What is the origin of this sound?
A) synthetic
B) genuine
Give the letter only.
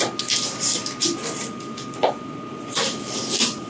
B